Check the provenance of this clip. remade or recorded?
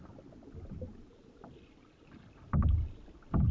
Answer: remade